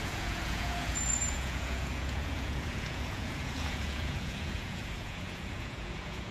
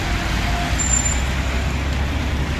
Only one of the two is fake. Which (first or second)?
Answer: first